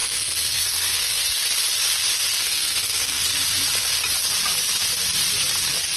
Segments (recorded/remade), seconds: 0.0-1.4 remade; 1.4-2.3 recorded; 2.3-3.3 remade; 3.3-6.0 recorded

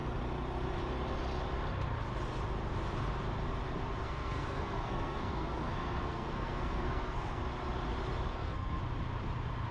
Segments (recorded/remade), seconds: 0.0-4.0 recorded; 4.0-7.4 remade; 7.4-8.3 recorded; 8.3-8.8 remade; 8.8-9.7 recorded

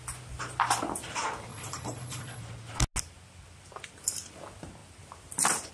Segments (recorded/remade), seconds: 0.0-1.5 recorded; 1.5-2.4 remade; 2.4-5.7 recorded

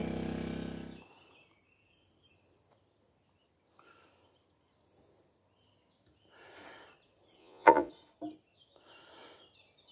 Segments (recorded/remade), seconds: 0.0-7.4 recorded; 7.4-7.9 remade; 7.9-9.9 recorded

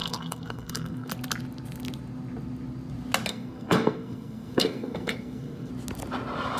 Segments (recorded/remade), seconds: 0.0-1.1 remade; 1.1-3.3 recorded; 3.3-5.7 remade; 5.7-6.6 recorded

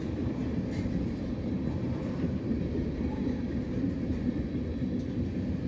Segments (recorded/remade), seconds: 0.0-0.4 remade; 0.4-1.2 recorded; 1.2-2.0 remade; 2.0-3.1 recorded; 3.1-5.7 remade